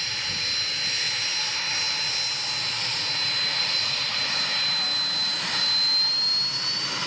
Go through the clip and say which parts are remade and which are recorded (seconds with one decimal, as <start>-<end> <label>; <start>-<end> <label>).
0.0-3.5 recorded; 3.5-4.4 remade; 4.4-7.1 recorded